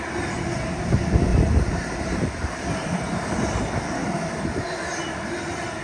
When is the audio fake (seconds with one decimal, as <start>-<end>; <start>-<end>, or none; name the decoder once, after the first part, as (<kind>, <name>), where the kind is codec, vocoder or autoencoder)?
1.3-2.7 (vocoder, BigVGAN v2); 4.0-4.6